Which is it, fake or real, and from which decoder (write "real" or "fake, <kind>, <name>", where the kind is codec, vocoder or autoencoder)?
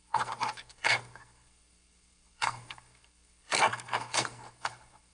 fake, codec, SNAC